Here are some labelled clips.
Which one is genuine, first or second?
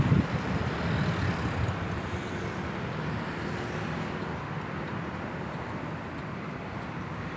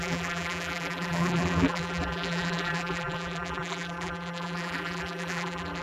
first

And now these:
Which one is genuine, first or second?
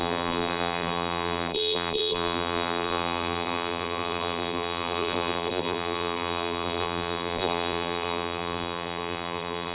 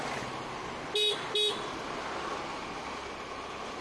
second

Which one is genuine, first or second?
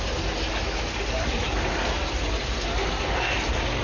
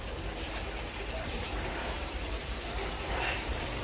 first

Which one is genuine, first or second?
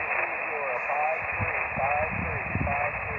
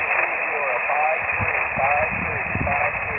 first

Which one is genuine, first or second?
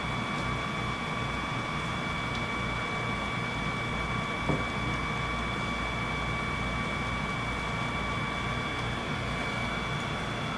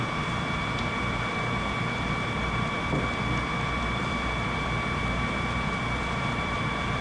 first